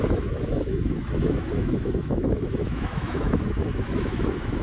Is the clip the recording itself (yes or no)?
no